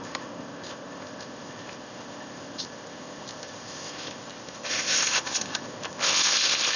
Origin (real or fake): fake